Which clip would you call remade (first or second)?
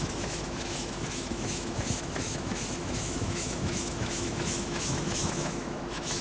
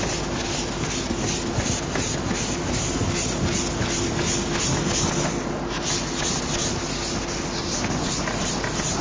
first